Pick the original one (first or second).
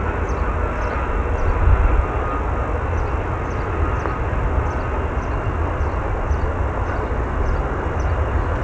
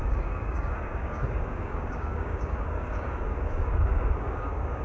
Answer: first